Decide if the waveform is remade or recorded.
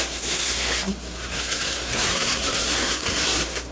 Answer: remade